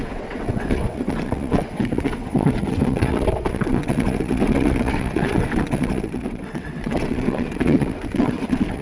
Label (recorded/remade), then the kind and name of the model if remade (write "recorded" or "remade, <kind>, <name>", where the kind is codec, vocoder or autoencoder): remade, vocoder, WaveNeXt